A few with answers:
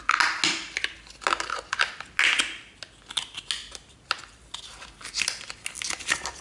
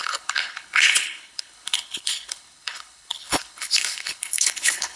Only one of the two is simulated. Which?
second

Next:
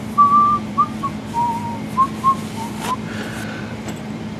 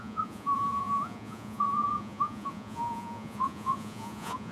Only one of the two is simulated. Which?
second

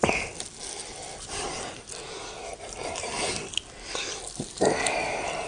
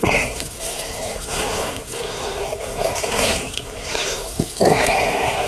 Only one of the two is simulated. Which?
second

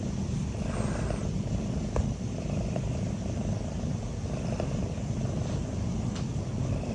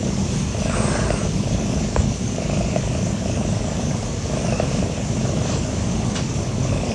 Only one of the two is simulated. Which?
second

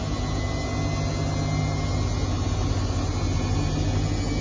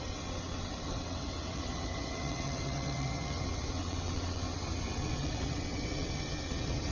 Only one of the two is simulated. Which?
second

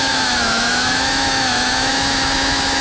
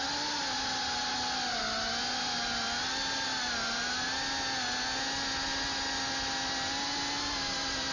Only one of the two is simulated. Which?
first